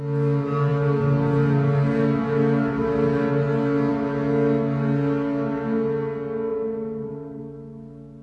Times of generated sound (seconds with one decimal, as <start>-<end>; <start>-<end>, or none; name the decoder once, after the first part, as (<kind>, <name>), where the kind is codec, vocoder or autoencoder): 6.5-7.4 (vocoder, BigVGAN v2)